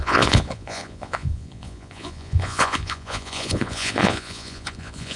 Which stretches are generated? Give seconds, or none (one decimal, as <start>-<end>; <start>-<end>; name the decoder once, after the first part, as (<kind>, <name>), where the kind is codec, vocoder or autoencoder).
0.0-5.2 (vocoder, Vocos)